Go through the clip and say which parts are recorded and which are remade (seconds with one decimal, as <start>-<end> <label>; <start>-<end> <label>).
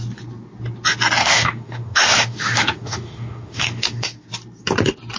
0.0-1.2 recorded; 1.2-4.3 remade; 4.3-5.2 recorded